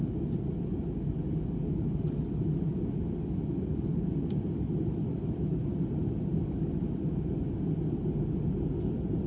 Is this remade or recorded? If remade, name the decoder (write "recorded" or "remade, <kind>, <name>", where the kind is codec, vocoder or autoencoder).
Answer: recorded